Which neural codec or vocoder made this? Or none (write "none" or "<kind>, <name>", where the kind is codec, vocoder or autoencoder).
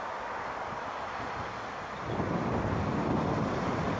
none